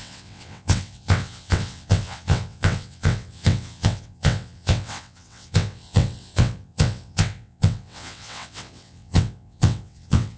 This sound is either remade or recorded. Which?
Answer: remade